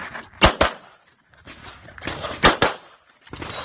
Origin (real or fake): real